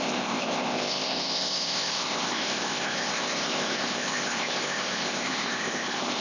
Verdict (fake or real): fake